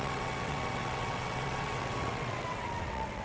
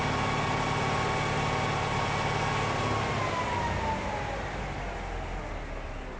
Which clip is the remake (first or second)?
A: first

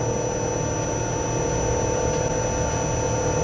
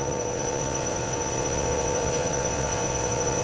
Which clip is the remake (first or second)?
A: second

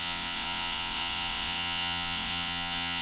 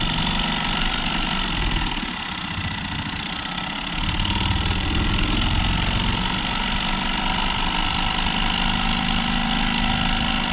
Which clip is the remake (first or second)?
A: first